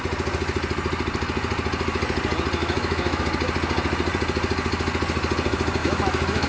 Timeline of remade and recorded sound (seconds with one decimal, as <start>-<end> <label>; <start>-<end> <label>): 0.0-2.6 recorded; 2.6-3.2 remade; 3.2-5.8 recorded; 5.8-6.5 remade